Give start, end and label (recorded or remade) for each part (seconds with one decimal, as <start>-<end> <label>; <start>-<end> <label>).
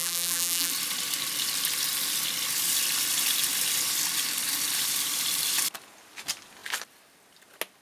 0.0-0.7 remade; 0.7-7.8 recorded